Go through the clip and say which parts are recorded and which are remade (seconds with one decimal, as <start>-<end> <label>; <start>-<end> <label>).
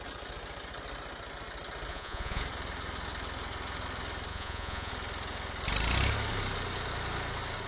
0.0-1.9 recorded; 1.9-2.4 remade; 2.4-4.3 recorded; 4.3-4.9 remade; 4.9-7.7 recorded